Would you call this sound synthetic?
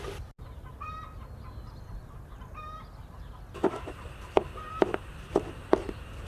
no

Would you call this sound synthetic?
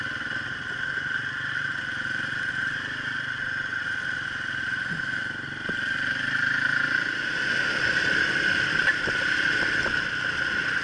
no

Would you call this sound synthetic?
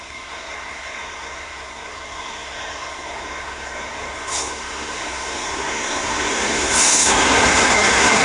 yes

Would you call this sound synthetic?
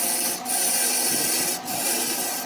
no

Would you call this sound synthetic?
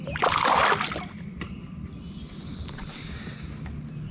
no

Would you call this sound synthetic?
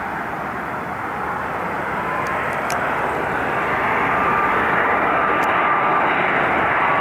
no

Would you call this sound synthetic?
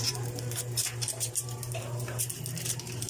yes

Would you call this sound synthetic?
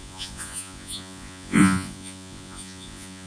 yes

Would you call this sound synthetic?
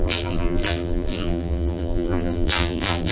yes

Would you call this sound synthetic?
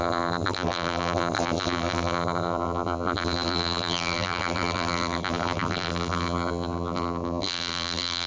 yes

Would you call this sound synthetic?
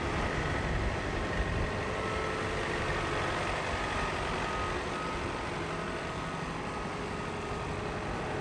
no